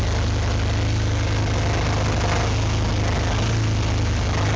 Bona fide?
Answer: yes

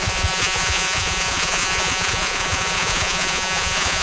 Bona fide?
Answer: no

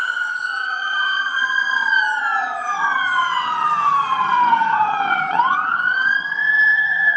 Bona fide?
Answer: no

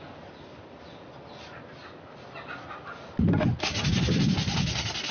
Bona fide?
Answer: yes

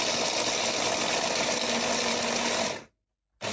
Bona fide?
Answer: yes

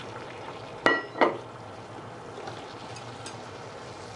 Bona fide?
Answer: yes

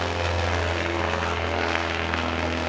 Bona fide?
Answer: no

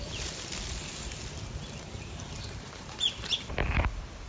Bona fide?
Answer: yes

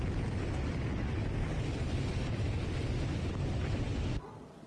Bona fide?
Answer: yes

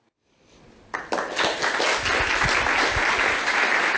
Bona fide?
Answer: yes